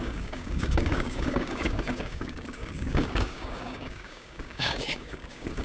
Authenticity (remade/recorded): remade